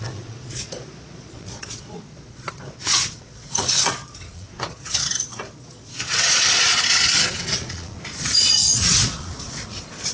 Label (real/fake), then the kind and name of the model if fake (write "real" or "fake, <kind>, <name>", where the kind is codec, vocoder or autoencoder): fake, vocoder, Vocos